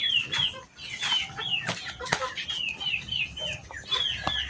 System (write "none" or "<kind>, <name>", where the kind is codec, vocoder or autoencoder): none